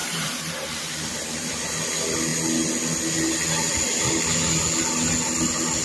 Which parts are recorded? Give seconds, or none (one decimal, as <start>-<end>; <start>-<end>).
1.7-5.8